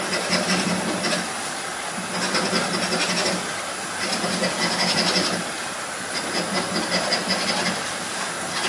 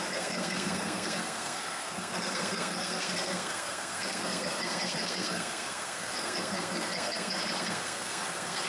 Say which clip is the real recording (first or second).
first